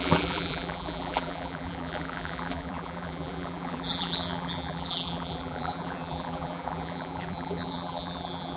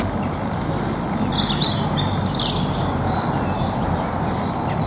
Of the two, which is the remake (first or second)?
first